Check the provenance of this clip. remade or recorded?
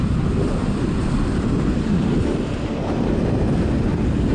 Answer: recorded